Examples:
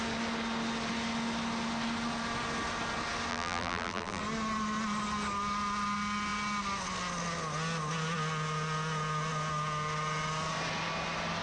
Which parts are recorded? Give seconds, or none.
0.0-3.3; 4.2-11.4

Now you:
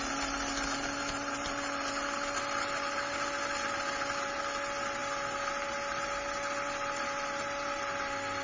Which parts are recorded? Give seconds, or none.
0.0-8.4

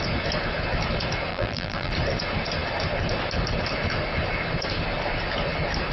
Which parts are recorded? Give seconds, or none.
0.0-1.3; 1.9-5.9

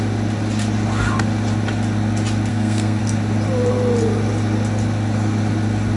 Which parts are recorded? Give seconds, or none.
0.0-2.5; 3.0-6.0

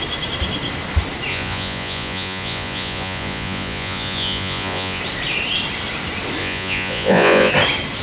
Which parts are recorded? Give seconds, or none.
0.0-1.3; 5.0-6.4; 7.5-8.0

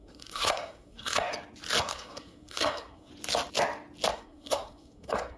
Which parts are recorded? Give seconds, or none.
1.3-1.8; 3.1-4.1